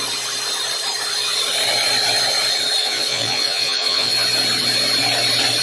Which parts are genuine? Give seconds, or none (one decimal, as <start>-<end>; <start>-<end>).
0.0-2.8; 4.1-5.6